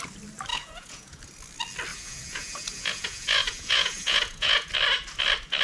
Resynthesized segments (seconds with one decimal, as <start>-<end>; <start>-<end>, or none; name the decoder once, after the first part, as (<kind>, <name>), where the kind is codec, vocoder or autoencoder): 0.5-1.2 (vocoder, Vocos); 1.9-4.7